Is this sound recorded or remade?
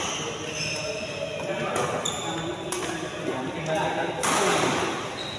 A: recorded